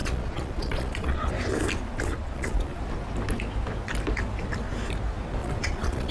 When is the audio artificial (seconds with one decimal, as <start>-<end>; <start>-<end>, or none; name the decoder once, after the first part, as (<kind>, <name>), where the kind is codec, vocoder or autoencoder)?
0.0-1.3 (vocoder, Vocos); 2.1-2.8; 5.4-6.1